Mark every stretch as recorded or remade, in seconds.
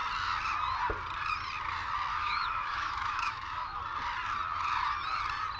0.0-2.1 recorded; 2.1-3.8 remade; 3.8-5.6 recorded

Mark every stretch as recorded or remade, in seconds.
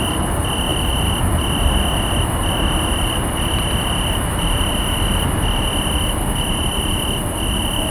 0.0-7.9 recorded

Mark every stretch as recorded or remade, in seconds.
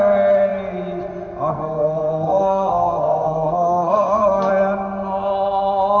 0.0-1.5 recorded; 1.5-4.5 remade; 4.5-6.0 recorded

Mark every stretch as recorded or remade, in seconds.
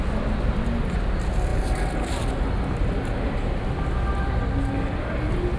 0.0-5.6 recorded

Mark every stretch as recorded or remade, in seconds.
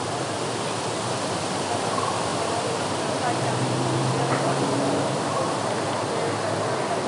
0.0-2.3 recorded; 2.3-3.5 remade; 3.5-7.1 recorded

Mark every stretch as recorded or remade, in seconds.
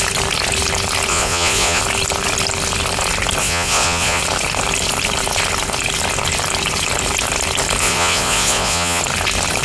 0.0-1.1 recorded; 1.1-1.8 remade; 1.8-3.4 recorded; 3.4-4.2 remade; 4.2-7.8 recorded; 7.8-9.0 remade; 9.0-9.6 recorded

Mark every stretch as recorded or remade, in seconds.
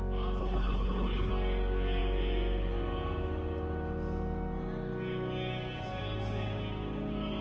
0.0-0.4 recorded; 0.4-1.3 remade; 1.3-7.4 recorded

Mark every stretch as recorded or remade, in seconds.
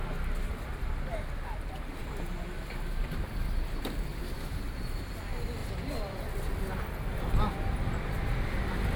0.0-4.1 recorded; 4.1-4.8 remade; 4.8-9.0 recorded